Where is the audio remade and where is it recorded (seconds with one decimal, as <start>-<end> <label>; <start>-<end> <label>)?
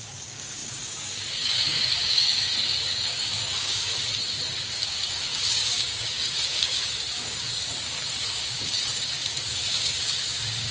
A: 0.0-3.9 remade; 3.9-4.5 recorded; 4.5-10.7 remade